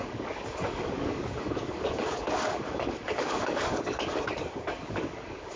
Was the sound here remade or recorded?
remade